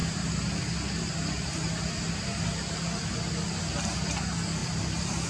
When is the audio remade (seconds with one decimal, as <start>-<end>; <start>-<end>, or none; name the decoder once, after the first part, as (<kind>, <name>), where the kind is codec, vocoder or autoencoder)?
none